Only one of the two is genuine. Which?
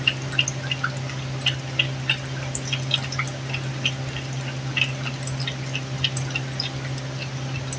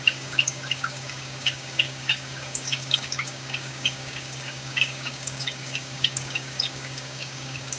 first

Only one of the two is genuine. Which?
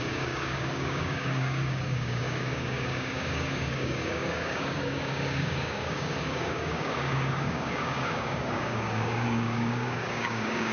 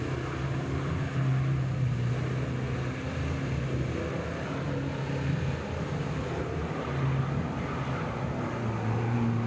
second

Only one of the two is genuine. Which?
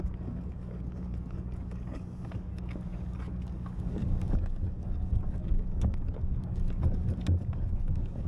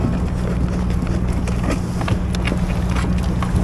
second